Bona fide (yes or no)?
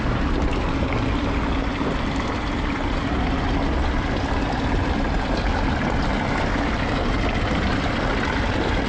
yes